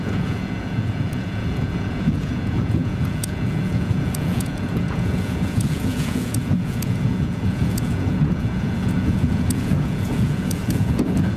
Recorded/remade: remade